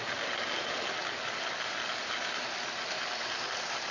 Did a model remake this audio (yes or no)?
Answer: yes